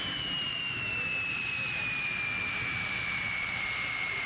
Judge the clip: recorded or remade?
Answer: remade